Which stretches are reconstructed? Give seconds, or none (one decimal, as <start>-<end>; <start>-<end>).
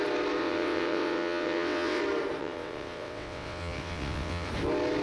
0.4-2.0; 2.4-4.5